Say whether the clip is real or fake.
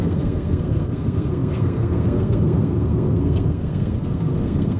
fake